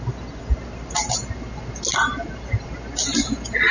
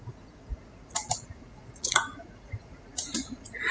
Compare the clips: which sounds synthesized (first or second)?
second